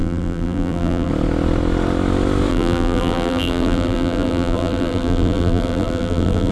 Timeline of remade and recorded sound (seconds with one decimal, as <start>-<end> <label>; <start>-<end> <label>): 0.0-1.1 remade; 1.1-2.5 recorded; 2.5-6.5 remade